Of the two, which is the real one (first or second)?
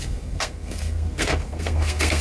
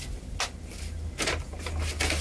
second